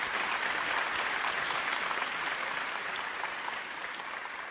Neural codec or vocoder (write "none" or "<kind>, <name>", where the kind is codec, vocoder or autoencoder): none